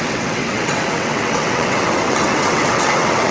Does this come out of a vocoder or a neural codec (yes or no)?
yes